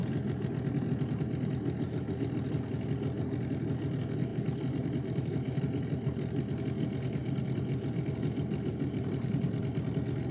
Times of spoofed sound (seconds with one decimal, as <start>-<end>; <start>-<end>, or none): 4.3-5.6; 7.2-9.6